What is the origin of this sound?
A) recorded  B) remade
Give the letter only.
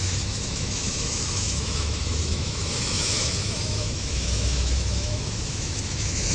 B